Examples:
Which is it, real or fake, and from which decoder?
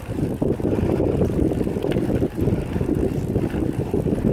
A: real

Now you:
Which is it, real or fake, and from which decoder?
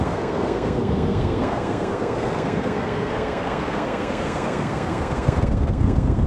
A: fake, codec, SNAC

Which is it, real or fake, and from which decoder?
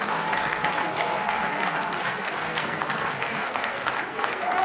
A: fake, codec, SNAC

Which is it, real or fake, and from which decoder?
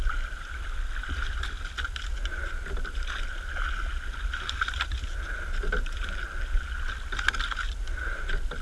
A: real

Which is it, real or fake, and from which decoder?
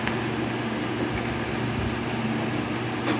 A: real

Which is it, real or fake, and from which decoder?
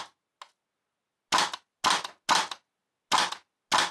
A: real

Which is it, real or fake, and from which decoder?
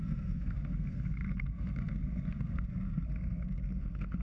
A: fake, codec, SNAC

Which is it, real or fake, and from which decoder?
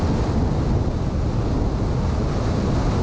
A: real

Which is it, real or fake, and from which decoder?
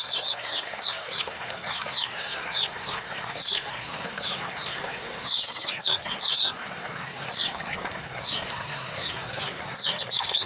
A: fake, codec, SNAC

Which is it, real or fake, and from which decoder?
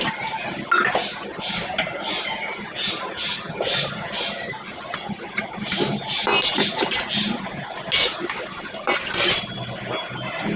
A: real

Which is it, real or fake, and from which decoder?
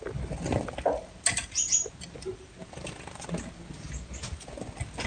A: real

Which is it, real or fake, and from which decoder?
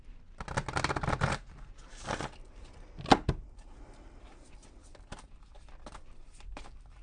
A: real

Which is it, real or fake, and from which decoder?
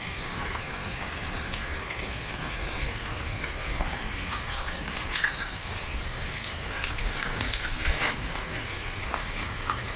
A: fake, codec, SNAC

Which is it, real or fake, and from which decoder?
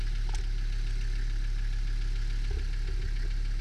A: real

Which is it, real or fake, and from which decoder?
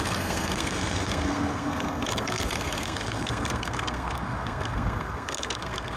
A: fake, codec, SNAC